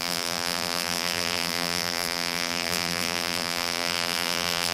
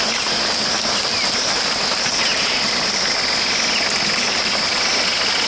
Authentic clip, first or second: second